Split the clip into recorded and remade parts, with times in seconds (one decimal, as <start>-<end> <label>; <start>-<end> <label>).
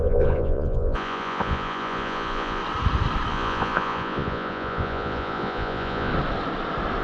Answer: 0.0-2.6 remade; 2.6-3.3 recorded; 3.3-6.1 remade; 6.1-7.0 recorded